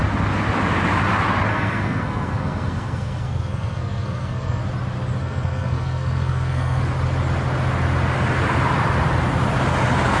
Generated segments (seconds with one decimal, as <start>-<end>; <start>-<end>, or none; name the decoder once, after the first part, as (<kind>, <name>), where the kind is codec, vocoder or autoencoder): 1.5-4.6 (codec, SNAC); 5.2-6.8